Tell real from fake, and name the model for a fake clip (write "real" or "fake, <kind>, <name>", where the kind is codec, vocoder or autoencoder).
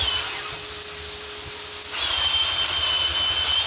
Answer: real